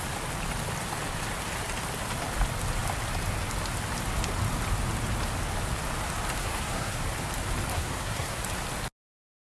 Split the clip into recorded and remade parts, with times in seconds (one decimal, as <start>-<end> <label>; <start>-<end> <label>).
0.0-6.4 recorded; 6.4-7.0 remade; 7.0-7.7 recorded; 7.7-8.4 remade; 8.4-9.5 recorded